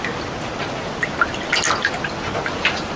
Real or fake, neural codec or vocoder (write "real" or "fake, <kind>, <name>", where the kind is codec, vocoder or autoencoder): real